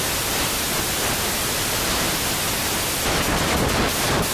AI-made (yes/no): no